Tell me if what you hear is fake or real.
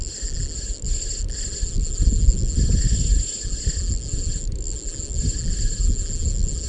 real